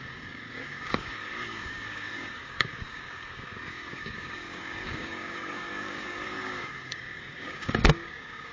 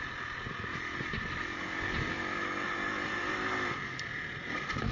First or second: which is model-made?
first